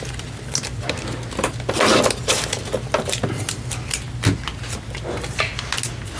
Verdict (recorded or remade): recorded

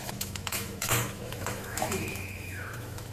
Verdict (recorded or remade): remade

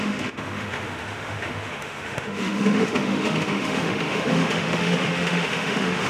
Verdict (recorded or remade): remade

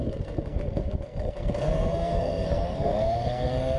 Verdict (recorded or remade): remade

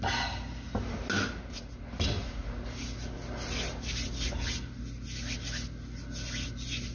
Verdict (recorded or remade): recorded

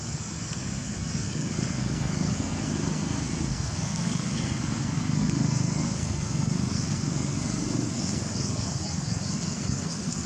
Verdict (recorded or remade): remade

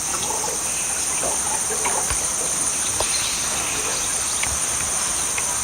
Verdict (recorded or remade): recorded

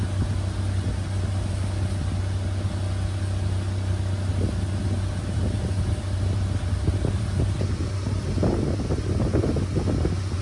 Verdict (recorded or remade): recorded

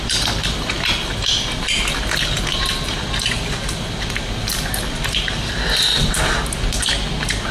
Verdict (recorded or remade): recorded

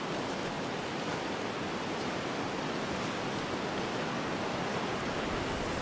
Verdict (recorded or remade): recorded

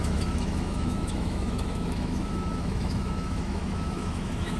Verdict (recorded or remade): remade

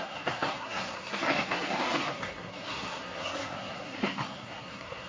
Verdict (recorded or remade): remade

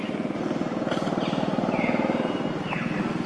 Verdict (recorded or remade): recorded